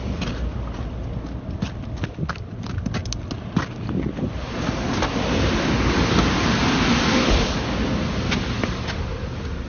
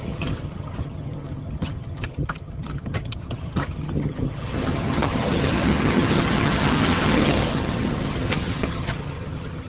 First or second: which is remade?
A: second